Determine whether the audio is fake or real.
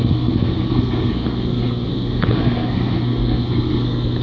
fake